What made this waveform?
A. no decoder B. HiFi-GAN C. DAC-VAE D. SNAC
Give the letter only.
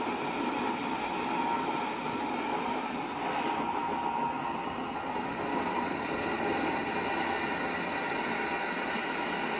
A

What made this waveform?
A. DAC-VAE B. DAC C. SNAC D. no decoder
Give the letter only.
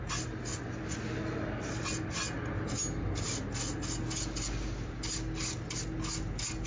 D